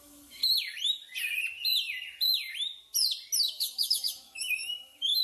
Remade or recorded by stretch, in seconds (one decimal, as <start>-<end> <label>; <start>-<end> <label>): 0.0-0.4 remade; 0.4-3.5 recorded; 3.5-5.2 remade